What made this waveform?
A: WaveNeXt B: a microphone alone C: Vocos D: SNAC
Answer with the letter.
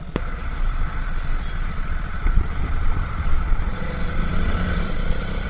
B